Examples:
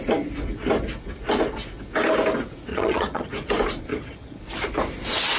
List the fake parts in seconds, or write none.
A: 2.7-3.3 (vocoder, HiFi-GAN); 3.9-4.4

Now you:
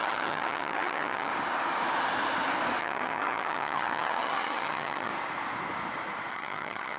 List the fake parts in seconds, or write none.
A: 0.0-1.3 (vocoder, HiFi-GAN); 2.8-5.1; 6.3-7.0